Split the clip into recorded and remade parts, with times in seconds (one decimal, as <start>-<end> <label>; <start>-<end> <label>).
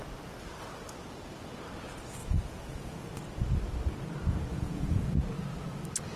0.0-2.2 recorded; 2.2-3.1 remade; 3.1-4.5 recorded; 4.5-5.1 remade; 5.1-6.2 recorded